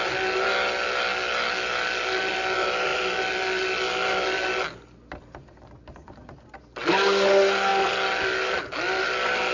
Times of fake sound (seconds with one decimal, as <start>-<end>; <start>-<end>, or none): none